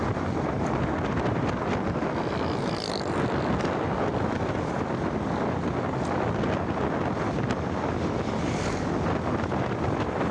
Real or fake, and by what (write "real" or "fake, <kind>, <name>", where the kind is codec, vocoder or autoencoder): real